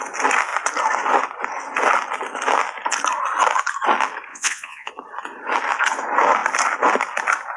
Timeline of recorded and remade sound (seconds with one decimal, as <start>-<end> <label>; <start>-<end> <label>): 0.0-4.3 recorded; 4.3-4.9 remade; 4.9-7.6 recorded